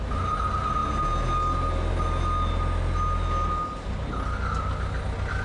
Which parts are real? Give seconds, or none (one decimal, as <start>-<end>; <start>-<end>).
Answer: 0.0-5.4